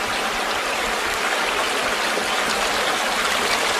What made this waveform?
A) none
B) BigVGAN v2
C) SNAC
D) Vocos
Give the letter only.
A